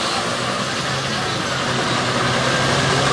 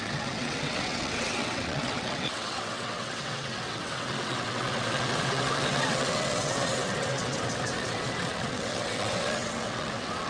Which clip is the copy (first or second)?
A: second